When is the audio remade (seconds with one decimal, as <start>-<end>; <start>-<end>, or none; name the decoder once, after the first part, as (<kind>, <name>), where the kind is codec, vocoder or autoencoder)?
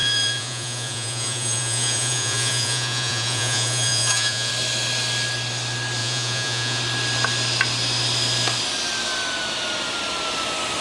0.0-4.5 (vocoder, Vocos); 6.0-6.8